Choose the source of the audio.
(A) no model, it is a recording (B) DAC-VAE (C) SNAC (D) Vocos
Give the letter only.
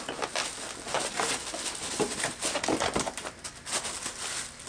A